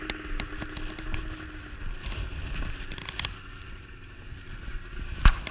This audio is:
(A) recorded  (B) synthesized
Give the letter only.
A